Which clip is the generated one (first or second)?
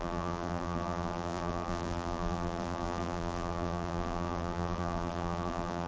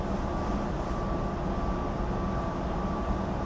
first